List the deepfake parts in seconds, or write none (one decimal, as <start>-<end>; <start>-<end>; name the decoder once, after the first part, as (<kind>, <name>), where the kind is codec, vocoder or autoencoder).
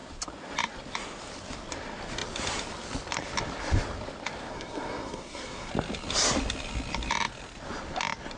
4.5-5.7 (codec, SNAC)